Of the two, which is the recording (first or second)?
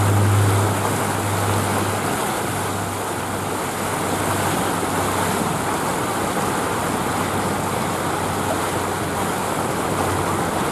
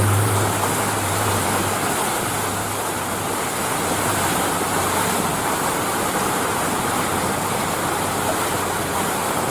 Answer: first